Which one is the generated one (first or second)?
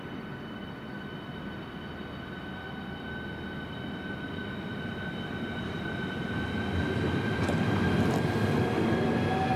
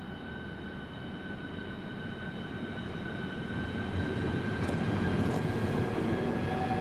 second